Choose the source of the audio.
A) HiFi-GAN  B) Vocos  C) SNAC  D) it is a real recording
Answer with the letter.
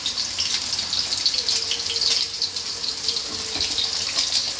D